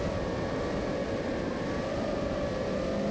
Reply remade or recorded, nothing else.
recorded